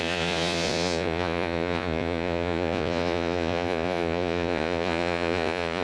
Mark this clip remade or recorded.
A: remade